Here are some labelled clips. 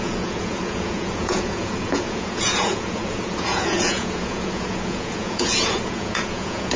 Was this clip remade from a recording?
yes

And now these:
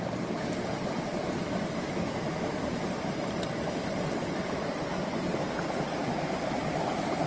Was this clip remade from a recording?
no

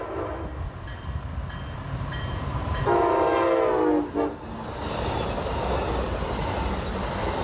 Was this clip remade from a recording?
no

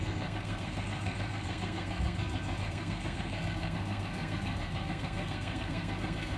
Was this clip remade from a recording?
yes